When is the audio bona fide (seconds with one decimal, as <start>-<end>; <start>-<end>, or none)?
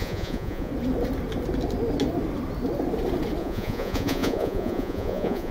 0.7-3.4